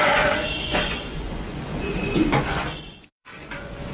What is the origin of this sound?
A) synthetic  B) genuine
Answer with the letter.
A